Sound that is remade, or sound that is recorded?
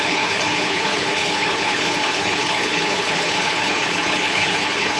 remade